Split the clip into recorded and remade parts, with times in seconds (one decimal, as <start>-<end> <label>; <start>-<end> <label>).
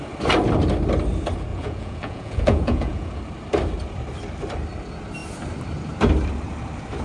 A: 0.0-1.5 recorded; 1.5-3.2 remade; 3.2-7.0 recorded